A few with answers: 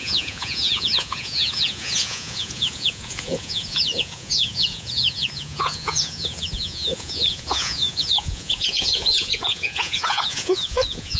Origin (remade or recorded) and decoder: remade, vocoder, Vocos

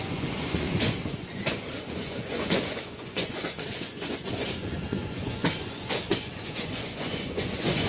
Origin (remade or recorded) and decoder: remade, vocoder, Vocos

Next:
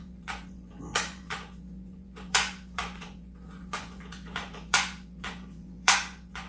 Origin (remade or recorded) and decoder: remade, vocoder, Vocos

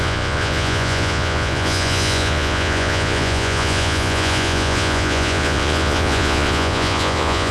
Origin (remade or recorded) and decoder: remade, vocoder, Vocos